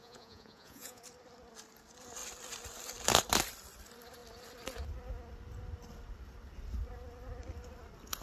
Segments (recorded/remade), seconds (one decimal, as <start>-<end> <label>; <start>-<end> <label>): 0.0-1.0 remade; 1.0-8.2 recorded

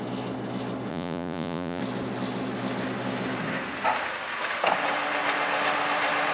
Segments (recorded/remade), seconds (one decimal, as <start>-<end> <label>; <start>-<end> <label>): 0.0-0.9 recorded; 0.9-1.8 remade; 1.8-6.3 recorded

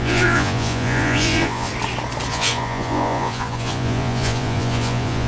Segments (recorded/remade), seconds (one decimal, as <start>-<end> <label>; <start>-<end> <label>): 0.0-1.7 remade; 1.7-2.3 recorded; 2.3-5.3 remade